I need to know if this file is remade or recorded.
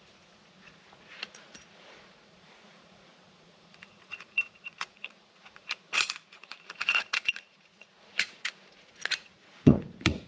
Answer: remade